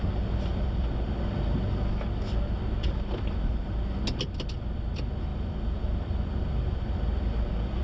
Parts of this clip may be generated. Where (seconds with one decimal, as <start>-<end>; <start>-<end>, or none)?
0.5-1.9; 5.3-7.8